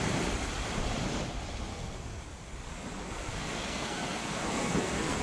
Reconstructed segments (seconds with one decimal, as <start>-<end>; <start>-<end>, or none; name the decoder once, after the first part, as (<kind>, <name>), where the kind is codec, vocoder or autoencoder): 1.7-2.2 (codec, SNAC); 3.0-5.2